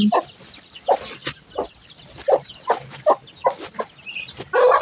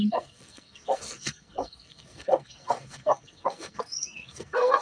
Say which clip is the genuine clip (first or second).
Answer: first